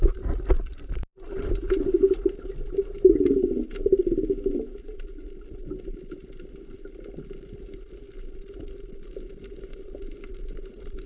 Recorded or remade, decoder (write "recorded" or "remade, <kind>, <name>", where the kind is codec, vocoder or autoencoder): recorded